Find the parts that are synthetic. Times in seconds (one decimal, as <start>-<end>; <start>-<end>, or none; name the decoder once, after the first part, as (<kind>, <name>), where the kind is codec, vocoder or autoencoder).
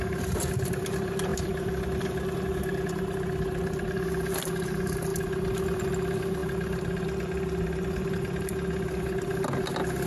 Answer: 1.3-1.8 (vocoder, BigVGAN v2)